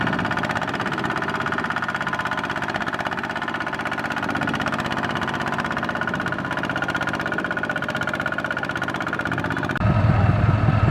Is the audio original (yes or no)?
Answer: yes